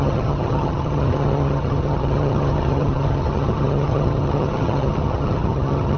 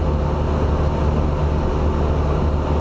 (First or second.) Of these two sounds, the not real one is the first